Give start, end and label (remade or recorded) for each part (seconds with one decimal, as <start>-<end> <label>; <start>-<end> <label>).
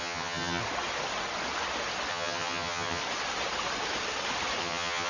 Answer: 0.0-0.6 remade; 0.6-2.1 recorded; 2.1-3.0 remade; 3.0-4.6 recorded; 4.6-5.1 remade